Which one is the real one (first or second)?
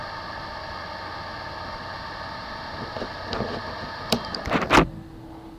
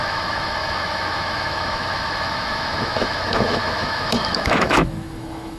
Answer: first